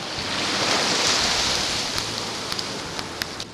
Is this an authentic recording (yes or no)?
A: yes